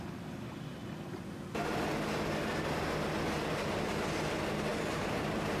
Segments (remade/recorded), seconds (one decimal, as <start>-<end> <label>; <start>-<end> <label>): 0.0-4.7 recorded; 4.7-5.6 remade